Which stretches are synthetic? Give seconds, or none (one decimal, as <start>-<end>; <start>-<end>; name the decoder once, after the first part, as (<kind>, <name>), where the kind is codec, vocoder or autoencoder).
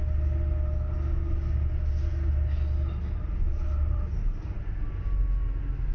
none